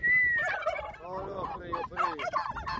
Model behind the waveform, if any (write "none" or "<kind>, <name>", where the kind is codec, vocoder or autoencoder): none